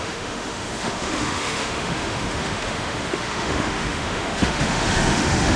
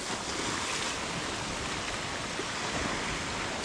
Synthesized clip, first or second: first